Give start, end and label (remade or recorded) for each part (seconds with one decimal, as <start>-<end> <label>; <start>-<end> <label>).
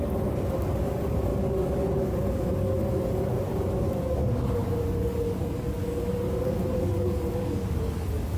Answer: 0.0-8.4 remade